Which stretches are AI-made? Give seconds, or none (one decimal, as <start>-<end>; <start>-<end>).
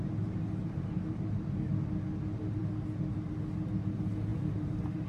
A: 0.6-1.7; 4.3-5.1